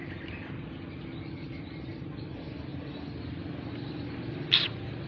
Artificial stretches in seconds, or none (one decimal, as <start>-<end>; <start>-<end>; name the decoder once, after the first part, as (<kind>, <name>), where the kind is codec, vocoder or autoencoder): 2.0-2.7 (vocoder, BigVGAN v2); 3.7-5.1